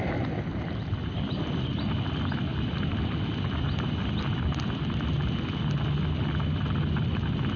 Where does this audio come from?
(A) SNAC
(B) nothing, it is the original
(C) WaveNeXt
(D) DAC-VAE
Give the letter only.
B